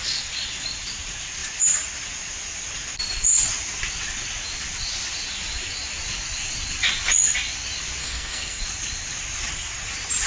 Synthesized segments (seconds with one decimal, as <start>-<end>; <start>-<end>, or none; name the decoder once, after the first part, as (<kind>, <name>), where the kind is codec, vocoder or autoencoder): 8.0-8.6 (codec, SNAC)